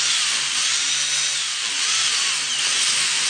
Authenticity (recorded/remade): recorded